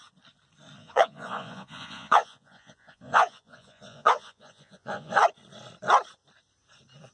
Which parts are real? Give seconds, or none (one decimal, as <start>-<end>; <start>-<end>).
0.0-0.8; 5.1-7.1